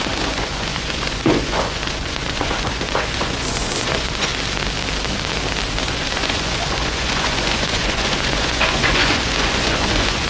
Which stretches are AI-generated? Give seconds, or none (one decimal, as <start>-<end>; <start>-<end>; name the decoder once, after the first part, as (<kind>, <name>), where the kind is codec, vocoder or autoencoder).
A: 0.0-4.3 (vocoder, Vocos); 5.8-10.3